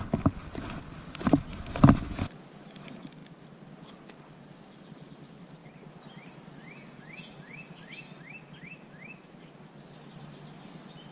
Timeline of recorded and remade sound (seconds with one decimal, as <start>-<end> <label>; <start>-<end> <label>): 0.0-11.1 recorded